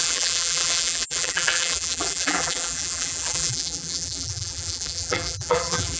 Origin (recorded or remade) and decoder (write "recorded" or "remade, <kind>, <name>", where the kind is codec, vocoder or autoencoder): remade, vocoder, BigVGAN v2